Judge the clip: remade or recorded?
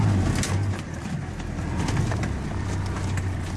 recorded